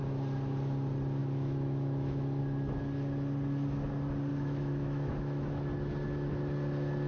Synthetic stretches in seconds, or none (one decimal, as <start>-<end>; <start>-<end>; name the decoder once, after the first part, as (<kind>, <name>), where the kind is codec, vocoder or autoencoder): 1.2-2.4 (autoencoder, DAC-VAE); 4.3-5.7